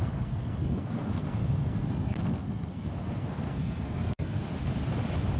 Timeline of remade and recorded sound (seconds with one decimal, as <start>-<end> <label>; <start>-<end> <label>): 0.0-4.4 remade; 4.4-5.4 recorded